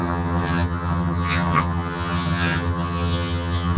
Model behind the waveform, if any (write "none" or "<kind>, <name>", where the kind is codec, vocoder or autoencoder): vocoder, HiFi-GAN